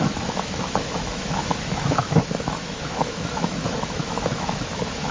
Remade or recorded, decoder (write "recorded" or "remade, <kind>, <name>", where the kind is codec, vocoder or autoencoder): remade, autoencoder, DAC-VAE